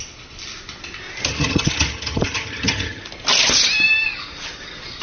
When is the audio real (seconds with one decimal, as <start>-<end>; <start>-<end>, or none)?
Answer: 0.0-1.3; 3.0-5.0